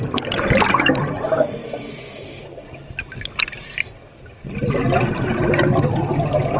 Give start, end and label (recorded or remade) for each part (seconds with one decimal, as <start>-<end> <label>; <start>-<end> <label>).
0.0-6.6 recorded